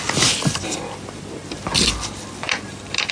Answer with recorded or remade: recorded